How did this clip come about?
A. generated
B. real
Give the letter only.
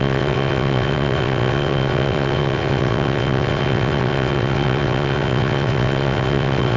A